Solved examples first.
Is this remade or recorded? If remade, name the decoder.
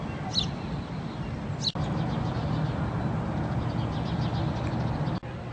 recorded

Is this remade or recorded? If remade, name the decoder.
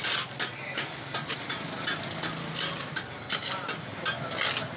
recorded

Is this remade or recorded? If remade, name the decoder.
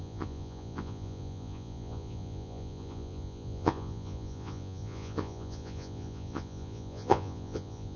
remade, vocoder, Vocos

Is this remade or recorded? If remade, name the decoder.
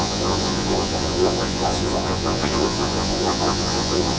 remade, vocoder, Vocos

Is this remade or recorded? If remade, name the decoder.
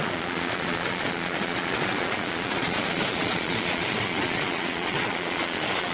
remade, vocoder, Vocos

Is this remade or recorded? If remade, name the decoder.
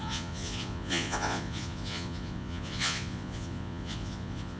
remade, vocoder, Vocos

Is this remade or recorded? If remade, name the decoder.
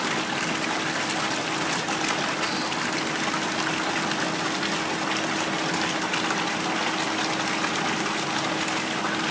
recorded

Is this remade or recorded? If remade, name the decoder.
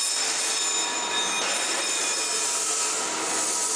recorded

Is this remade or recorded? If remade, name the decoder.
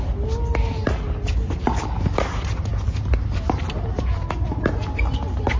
recorded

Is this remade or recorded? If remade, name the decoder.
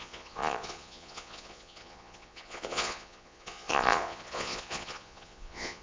remade, vocoder, Vocos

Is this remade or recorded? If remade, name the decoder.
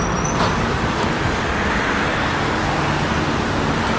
recorded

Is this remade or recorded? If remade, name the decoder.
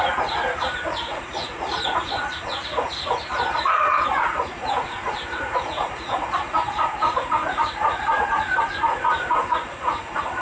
remade, vocoder, Vocos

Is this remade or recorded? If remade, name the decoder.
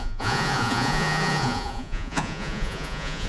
remade, vocoder, Vocos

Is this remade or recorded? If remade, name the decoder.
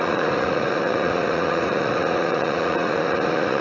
remade, vocoder, Vocos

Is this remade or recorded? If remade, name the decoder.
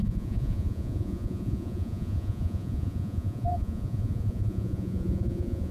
remade, vocoder, Vocos